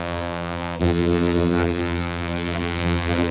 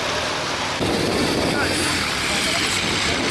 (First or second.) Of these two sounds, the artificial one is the first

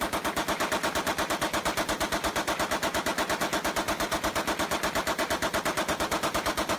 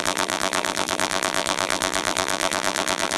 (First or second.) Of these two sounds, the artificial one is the second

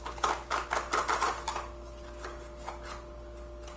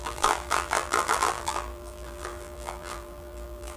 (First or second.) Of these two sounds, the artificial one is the second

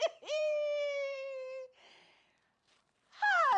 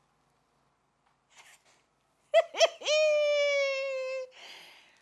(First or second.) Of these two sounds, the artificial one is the first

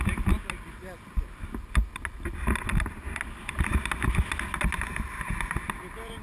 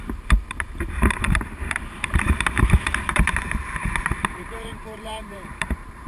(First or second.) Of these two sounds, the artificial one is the second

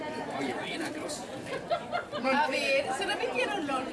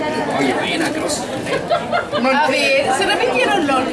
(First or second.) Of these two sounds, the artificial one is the first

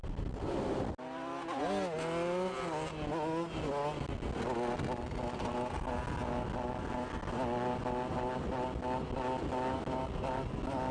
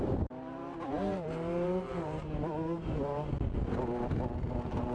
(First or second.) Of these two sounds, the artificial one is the second